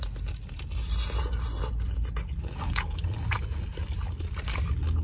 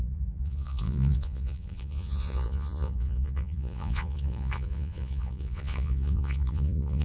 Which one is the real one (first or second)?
first